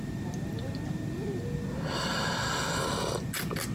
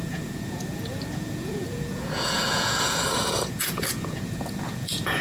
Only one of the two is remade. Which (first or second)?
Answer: second